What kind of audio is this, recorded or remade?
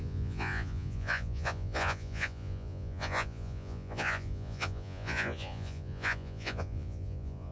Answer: remade